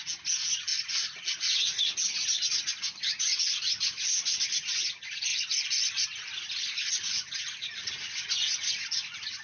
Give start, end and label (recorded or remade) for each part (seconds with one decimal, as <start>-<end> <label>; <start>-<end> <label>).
0.0-9.4 recorded